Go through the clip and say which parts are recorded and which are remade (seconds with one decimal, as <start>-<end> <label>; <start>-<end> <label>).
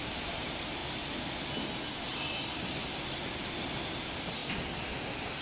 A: 0.0-0.8 remade; 0.8-4.0 recorded; 4.0-4.4 remade; 4.4-5.4 recorded